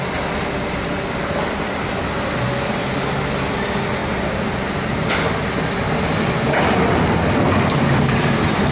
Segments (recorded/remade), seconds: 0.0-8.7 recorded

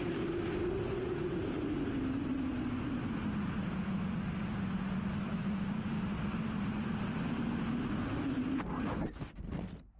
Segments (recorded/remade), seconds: 0.0-5.4 recorded; 5.4-8.1 remade; 8.1-10.0 recorded